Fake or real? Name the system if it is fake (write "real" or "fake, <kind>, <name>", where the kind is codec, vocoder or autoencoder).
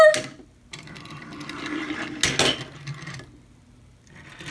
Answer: real